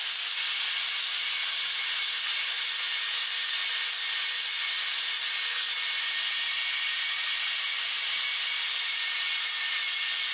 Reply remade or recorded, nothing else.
recorded